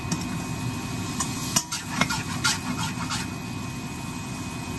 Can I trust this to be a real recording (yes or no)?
yes